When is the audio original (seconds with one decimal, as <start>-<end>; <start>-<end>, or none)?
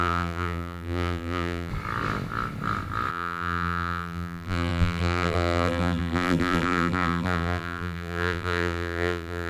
1.7-3.1